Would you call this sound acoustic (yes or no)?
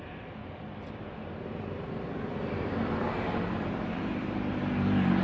no